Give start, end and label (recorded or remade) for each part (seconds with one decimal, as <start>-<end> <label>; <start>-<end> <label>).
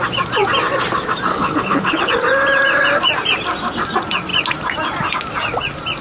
0.0-1.3 recorded; 1.3-2.1 remade; 2.1-6.0 recorded